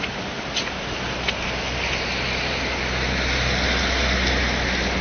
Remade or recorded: recorded